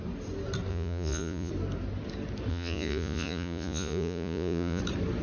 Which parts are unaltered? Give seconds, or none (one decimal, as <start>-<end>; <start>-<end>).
0.0-0.7; 1.5-2.5; 4.8-5.2